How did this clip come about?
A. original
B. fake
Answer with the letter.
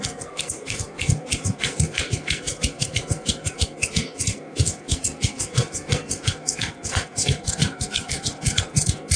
B